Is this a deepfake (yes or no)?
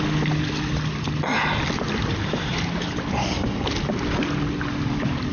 no